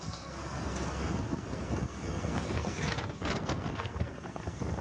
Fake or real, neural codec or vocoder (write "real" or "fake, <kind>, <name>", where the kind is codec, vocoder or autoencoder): fake, codec, SNAC